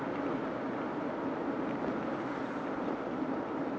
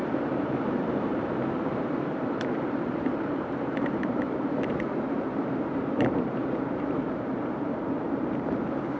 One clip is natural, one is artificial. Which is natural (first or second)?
first